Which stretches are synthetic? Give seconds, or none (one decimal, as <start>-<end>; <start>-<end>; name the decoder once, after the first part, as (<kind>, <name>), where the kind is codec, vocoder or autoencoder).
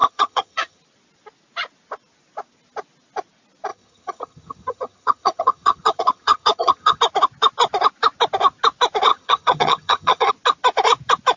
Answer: 0.0-0.8 (vocoder, HiFi-GAN); 3.7-7.0; 9.1-10.3